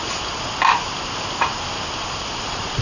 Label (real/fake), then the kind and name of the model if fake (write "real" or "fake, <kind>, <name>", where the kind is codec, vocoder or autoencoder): real